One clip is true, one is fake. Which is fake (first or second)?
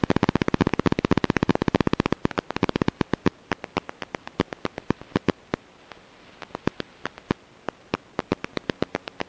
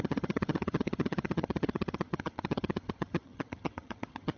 second